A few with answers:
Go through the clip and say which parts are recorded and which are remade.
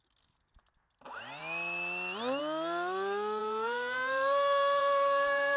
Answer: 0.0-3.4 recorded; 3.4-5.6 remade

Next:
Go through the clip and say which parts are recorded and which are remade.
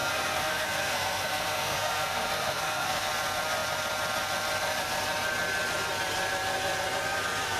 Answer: 0.0-3.1 remade; 3.1-7.6 recorded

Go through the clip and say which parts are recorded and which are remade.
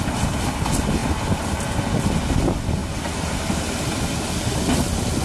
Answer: 0.0-5.2 recorded